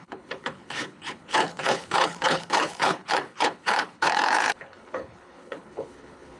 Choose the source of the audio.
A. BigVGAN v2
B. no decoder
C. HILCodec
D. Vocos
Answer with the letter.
C